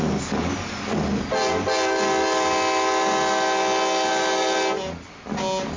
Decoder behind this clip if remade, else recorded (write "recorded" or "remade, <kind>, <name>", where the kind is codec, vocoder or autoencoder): recorded